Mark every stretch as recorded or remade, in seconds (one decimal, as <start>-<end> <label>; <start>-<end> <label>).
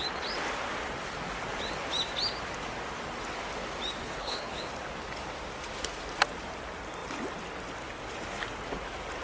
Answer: 0.0-4.0 recorded; 4.0-4.6 remade; 4.6-9.2 recorded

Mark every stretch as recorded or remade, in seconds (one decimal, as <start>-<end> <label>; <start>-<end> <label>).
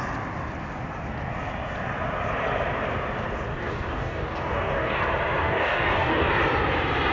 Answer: 0.0-3.5 recorded; 3.5-5.0 remade; 5.0-5.4 recorded; 5.4-6.3 remade; 6.3-7.1 recorded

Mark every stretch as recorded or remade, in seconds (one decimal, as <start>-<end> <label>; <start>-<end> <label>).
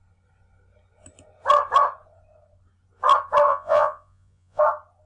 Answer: 0.0-3.5 recorded; 3.5-4.6 remade; 4.6-5.1 recorded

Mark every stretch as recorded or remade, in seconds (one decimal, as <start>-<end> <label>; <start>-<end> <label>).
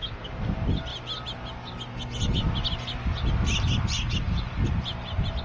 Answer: 0.0-5.4 recorded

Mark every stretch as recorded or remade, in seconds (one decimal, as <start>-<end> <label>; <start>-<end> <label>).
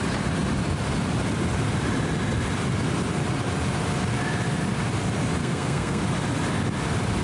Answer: 0.0-5.4 recorded; 5.4-6.0 remade; 6.0-7.2 recorded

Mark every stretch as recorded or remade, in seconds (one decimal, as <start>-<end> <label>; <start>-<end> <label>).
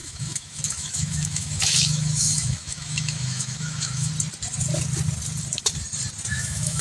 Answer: 0.0-4.1 remade; 4.1-6.3 recorded; 6.3-6.8 remade